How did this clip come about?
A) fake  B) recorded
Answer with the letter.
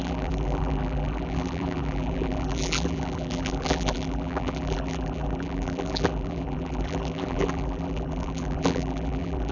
A